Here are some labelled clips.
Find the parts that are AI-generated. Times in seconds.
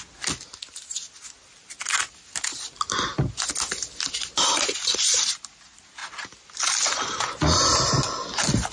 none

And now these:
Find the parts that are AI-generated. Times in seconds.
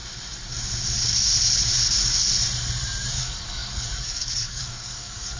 3.2-5.4 (codec, DAC)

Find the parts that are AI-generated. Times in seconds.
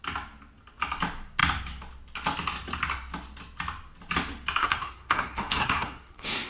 4.6-6.5 (codec, SNAC)